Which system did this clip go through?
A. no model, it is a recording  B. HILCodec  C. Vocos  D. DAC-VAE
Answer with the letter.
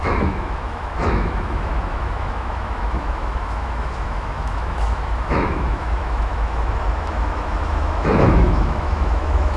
D